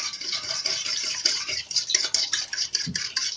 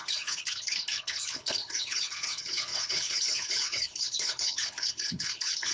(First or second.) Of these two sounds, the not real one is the second